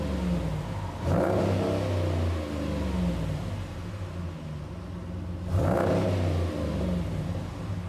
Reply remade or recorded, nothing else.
recorded